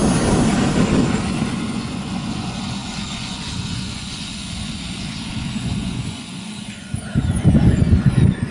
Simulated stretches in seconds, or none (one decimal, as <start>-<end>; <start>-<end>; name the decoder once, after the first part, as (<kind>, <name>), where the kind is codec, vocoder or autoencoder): 1.3-8.5 (vocoder, Vocos)